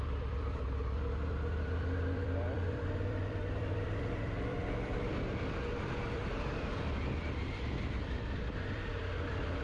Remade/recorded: remade